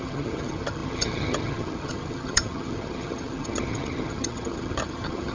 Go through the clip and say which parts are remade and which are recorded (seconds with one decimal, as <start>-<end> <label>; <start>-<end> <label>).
0.0-5.3 remade